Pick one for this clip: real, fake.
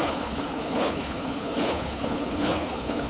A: fake